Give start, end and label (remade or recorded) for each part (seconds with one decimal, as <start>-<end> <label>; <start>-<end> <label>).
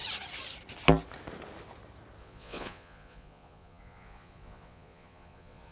0.0-2.2 recorded; 2.2-5.7 remade